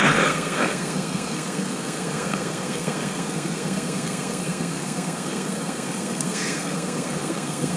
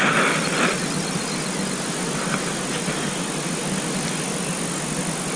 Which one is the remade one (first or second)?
first